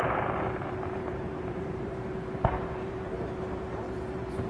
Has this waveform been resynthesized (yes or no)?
yes